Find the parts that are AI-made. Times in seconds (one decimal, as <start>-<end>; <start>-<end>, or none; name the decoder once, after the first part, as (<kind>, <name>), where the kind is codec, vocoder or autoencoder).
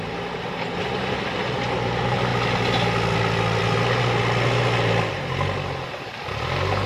0.0-2.3 (vocoder, BigVGAN v2); 3.6-6.9